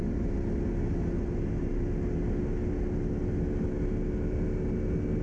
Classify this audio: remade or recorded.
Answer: recorded